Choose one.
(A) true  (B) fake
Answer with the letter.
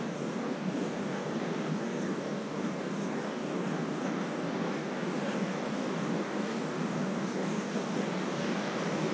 B